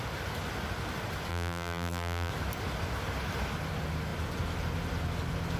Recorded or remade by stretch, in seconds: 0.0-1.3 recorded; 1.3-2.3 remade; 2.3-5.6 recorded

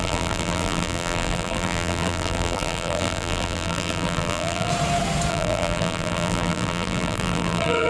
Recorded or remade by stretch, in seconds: 0.0-4.7 remade; 4.7-5.3 recorded; 5.3-7.9 remade

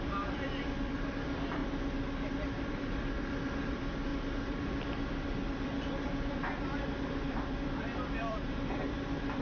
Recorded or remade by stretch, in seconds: 0.0-1.6 remade; 1.6-2.7 recorded; 2.7-9.4 remade

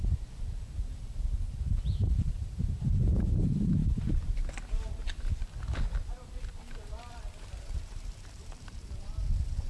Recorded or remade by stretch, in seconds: 0.0-5.0 remade; 5.0-6.1 recorded; 6.1-9.7 remade